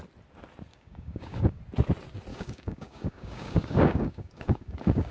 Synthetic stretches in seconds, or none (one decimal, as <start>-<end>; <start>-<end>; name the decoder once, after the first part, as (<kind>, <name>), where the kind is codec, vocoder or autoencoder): 0.7-1.6 (codec, DAC); 2.3-5.1